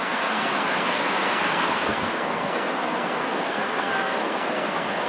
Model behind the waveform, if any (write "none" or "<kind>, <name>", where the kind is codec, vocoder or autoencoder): codec, SNAC